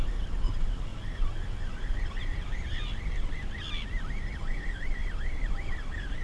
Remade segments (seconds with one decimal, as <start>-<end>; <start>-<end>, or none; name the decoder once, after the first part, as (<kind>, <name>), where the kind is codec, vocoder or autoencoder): none